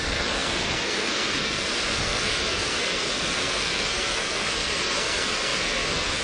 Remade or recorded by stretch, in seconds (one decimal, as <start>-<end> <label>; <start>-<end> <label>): 0.0-6.2 remade

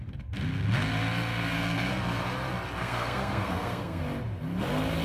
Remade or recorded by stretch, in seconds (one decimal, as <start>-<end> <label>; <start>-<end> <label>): 0.0-1.3 recorded; 1.3-1.9 remade; 1.9-2.8 recorded; 2.8-4.0 remade; 4.0-5.0 recorded

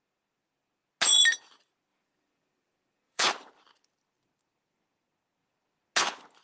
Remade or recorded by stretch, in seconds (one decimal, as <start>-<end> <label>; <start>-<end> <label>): 0.0-1.9 recorded; 1.9-3.3 remade; 3.3-6.4 recorded

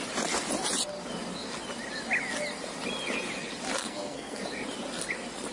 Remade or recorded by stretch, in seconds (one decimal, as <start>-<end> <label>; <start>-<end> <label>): 0.0-3.8 recorded; 3.8-4.4 remade; 4.4-5.5 recorded

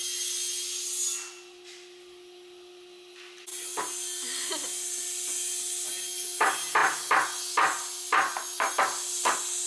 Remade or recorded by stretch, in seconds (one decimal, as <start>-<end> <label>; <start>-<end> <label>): 0.0-9.7 recorded

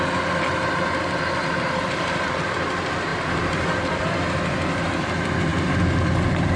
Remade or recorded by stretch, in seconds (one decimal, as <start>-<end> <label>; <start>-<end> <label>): 0.0-1.4 recorded; 1.4-2.4 remade; 2.4-3.1 recorded; 3.1-4.0 remade; 4.0-6.6 recorded

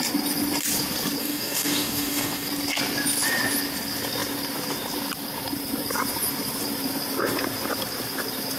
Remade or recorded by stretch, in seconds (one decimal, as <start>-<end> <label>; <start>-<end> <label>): 0.0-1.2 recorded; 1.2-2.5 remade; 2.5-8.6 recorded